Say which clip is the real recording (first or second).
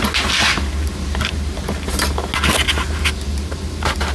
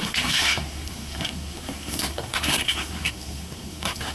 first